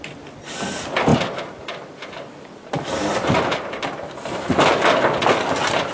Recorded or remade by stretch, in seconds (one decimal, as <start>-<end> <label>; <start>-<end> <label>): 0.0-1.1 recorded; 1.1-4.5 remade; 4.5-5.9 recorded